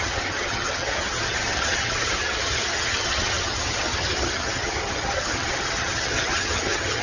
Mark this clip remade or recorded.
remade